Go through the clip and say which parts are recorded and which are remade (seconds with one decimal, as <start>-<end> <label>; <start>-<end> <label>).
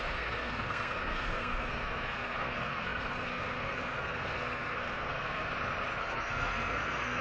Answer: 0.0-5.5 remade; 5.5-6.0 recorded; 6.0-7.2 remade